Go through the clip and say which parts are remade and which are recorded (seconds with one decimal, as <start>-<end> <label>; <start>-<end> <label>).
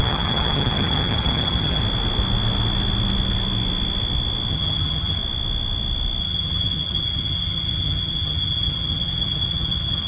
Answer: 0.0-1.8 remade; 1.8-4.5 recorded; 4.5-5.2 remade; 5.2-6.2 recorded; 6.2-10.1 remade